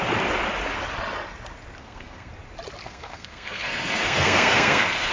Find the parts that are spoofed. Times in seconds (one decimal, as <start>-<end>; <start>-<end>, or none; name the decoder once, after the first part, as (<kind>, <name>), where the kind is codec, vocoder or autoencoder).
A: 1.8-2.3 (codec, SNAC); 2.8-5.1